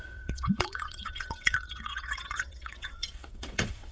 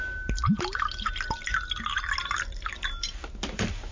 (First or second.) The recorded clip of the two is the second